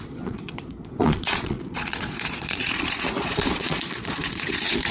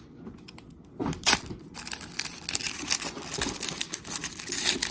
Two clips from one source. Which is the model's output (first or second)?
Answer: first